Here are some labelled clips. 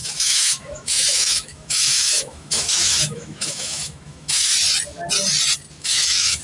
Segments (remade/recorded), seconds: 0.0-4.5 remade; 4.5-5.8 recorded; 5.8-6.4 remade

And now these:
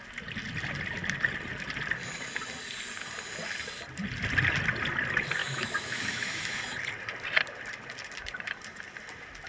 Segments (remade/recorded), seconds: 0.0-5.4 recorded; 5.4-6.6 remade; 6.6-9.5 recorded